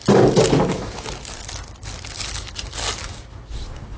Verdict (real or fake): real